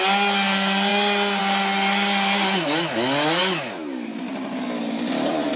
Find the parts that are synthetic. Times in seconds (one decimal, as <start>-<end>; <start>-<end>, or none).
none